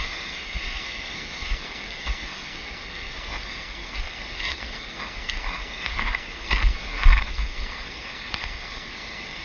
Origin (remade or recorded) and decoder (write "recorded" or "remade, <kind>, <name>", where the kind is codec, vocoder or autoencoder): remade, codec, SNAC